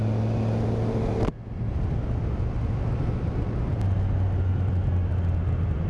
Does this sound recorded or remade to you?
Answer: recorded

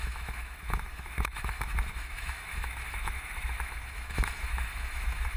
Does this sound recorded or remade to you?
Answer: remade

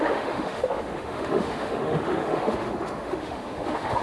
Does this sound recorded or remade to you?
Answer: remade